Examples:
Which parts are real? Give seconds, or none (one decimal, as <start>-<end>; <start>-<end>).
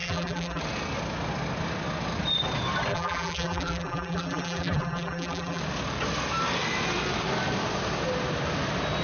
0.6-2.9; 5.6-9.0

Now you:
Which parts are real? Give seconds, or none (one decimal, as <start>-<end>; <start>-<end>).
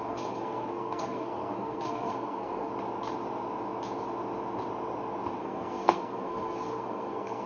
2.7-5.4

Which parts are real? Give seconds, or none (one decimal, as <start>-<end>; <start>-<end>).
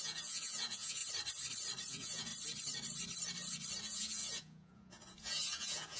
1.0-1.9; 2.3-3.8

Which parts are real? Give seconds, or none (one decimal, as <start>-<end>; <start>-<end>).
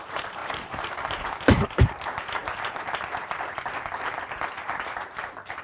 2.4-4.5